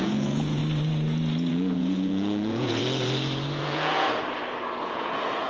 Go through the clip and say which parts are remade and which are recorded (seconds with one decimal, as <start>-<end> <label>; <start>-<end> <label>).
0.0-0.6 remade; 0.6-1.5 recorded; 1.5-2.8 remade; 2.8-3.6 recorded; 3.6-4.2 remade; 4.2-4.8 recorded; 4.8-5.5 remade